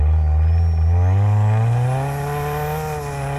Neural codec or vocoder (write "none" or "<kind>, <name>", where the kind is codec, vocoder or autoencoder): none